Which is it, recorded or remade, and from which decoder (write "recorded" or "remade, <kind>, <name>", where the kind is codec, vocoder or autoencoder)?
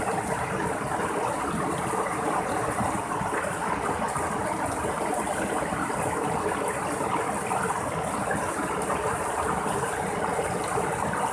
recorded